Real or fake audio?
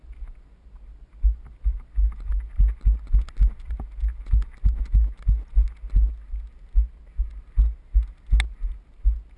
real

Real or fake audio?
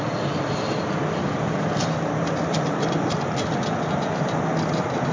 real